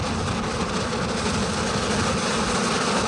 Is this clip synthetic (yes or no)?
no